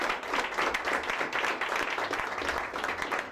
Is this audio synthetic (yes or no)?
no